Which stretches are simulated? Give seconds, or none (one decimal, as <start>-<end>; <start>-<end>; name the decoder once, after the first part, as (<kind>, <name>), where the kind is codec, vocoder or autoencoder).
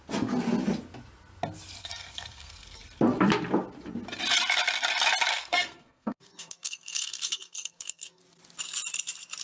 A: 1.8-2.8 (codec, SNAC); 5.3-8.2